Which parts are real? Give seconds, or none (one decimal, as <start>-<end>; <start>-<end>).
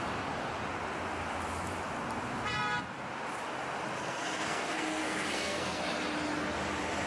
0.0-4.0; 5.8-7.1